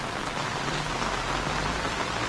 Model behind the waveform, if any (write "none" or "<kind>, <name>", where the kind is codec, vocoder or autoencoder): none